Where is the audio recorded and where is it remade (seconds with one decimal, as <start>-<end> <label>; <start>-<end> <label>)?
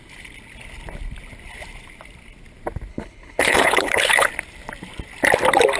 0.0-2.9 recorded; 2.9-4.3 remade; 4.3-5.8 recorded